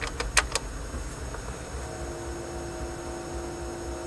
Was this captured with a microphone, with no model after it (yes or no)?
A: yes